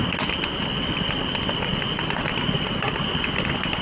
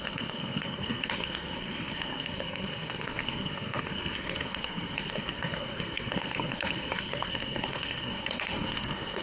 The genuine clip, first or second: first